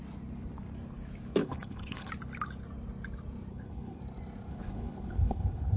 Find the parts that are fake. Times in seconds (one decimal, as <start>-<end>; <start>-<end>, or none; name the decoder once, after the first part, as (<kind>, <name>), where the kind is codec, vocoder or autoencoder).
1.4-2.1 (codec, HILCodec); 3.5-4.0; 4.5-5.8